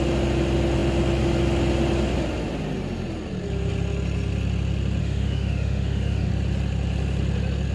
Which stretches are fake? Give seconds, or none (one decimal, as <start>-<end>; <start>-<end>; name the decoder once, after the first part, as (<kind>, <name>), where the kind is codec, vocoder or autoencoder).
5.0-6.3 (autoencoder, DAC-VAE)